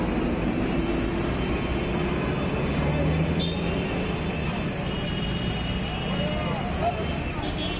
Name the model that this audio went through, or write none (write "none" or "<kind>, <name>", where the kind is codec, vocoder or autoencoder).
none